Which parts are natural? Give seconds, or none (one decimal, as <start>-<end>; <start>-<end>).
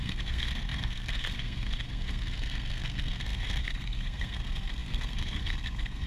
none